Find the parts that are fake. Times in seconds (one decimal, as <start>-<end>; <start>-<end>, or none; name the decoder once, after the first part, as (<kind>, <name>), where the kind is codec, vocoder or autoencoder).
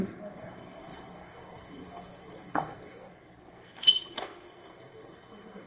0.0-5.7 (codec, SNAC)